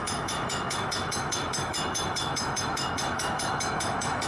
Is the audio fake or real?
fake